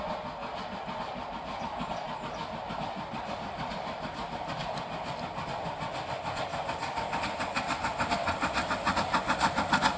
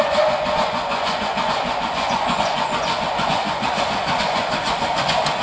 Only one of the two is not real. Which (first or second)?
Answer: second